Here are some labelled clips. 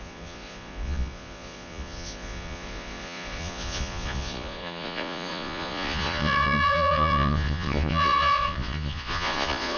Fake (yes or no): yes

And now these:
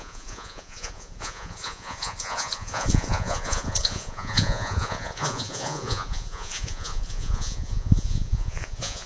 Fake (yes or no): yes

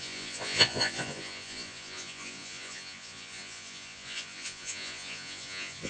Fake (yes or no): yes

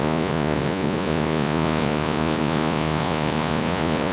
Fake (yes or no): yes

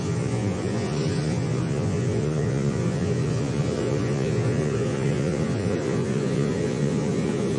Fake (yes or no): yes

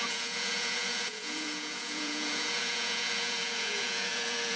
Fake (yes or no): yes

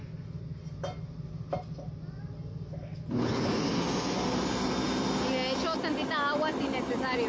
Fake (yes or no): no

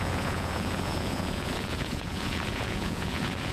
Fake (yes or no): yes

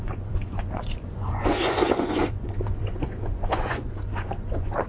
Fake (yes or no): yes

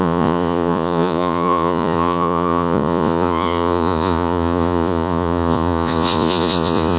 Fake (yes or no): yes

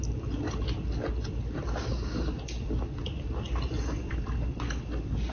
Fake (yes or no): no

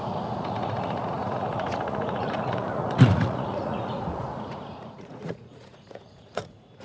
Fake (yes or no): yes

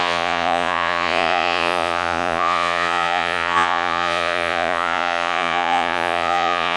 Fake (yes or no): yes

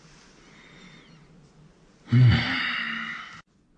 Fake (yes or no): no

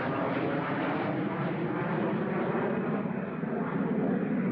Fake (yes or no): no